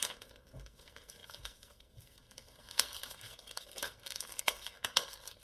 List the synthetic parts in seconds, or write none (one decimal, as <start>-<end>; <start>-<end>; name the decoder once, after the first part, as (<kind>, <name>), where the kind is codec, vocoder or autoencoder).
0.0-5.4 (codec, SNAC)